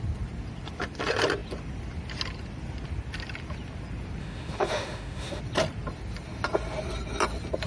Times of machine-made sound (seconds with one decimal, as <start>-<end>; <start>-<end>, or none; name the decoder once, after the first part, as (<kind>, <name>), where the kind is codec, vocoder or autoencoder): 4.2-5.4 (autoencoder, DAC-VAE)